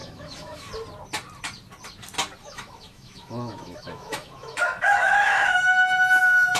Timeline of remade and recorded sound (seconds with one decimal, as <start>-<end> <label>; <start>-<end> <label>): 0.0-0.7 remade; 0.7-2.4 recorded; 2.4-6.6 remade